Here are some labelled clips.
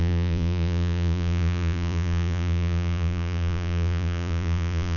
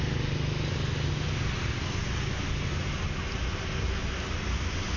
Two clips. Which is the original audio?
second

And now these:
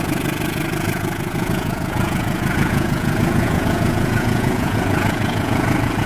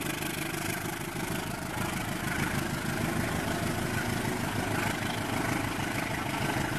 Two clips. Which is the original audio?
second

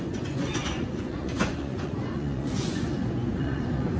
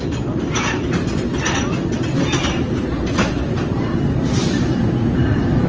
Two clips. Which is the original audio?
second